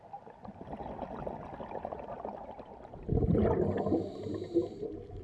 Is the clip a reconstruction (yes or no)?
no